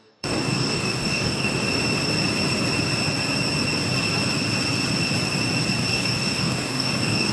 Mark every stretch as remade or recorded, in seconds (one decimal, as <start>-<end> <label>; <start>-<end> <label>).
0.0-1.5 remade; 1.5-5.9 recorded; 5.9-7.3 remade